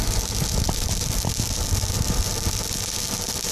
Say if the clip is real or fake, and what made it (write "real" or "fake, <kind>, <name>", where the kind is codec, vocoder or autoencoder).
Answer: real